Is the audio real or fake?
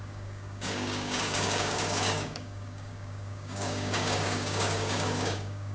fake